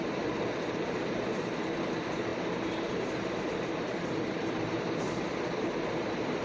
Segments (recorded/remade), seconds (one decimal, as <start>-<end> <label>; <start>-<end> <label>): 0.0-2.3 remade; 2.3-2.9 recorded; 2.9-6.4 remade